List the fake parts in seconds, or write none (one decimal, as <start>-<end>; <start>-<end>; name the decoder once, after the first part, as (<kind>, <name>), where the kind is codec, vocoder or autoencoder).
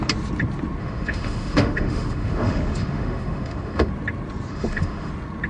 0.8-3.9 (autoencoder, DAC-VAE); 4.5-5.1